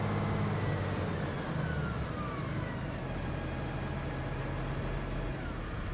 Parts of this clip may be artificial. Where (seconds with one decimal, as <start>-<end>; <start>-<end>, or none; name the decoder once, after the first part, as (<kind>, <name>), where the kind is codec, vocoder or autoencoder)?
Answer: none